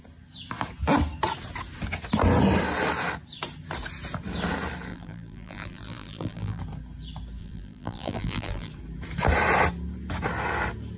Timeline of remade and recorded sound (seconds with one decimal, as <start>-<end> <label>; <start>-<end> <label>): 0.0-4.9 recorded; 4.9-6.6 remade; 6.6-7.4 recorded; 7.4-8.7 remade; 8.7-11.0 recorded